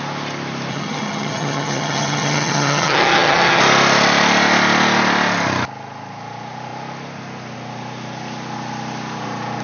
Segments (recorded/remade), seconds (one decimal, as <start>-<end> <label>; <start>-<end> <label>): 0.0-0.7 recorded; 0.7-3.6 remade; 3.6-9.6 recorded